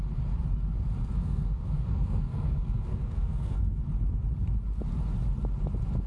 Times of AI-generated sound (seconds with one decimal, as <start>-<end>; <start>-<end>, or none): 1.0-3.8